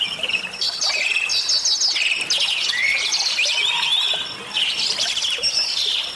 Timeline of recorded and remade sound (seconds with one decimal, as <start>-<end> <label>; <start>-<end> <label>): 0.0-6.2 recorded